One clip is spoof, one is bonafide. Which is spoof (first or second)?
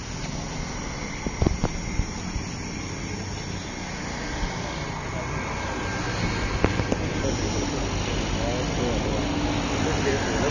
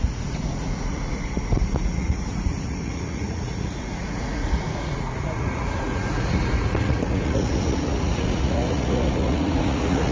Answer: second